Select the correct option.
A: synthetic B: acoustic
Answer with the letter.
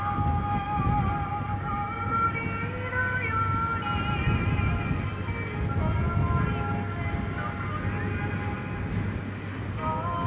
B